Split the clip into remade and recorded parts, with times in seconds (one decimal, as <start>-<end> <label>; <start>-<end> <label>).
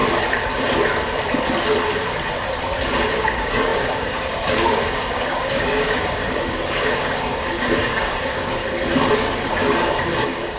0.0-3.1 recorded; 3.1-8.6 remade; 8.6-9.2 recorded; 9.2-10.6 remade